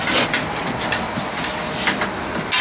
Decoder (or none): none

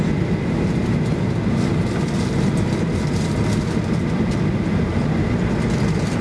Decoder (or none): none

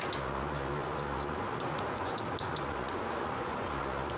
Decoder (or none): vocoder, Vocos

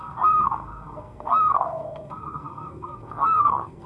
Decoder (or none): codec, SNAC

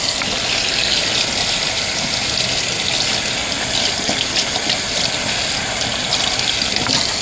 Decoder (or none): none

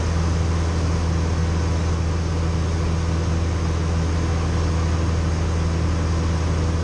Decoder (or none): none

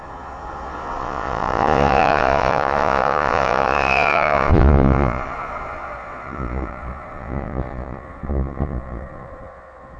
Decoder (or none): vocoder, Vocos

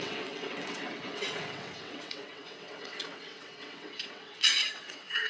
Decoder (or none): vocoder, WaveNeXt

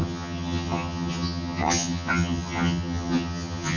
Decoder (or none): vocoder, HiFi-GAN